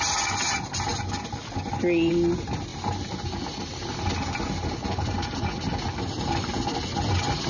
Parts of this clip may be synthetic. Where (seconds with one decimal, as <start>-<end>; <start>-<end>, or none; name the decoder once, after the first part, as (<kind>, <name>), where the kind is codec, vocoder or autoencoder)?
none